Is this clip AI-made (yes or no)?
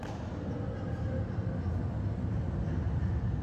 no